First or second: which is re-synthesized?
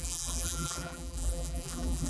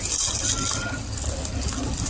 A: first